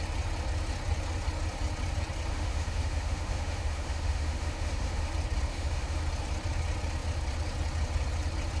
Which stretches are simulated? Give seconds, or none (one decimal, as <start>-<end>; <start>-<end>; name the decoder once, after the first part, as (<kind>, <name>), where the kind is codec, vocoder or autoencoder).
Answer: 2.3-5.1 (autoencoder, DAC-VAE); 5.5-6.0